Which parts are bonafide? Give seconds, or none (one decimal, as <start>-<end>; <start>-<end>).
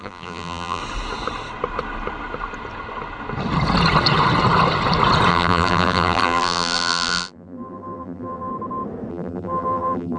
0.8-5.3; 8.5-9.1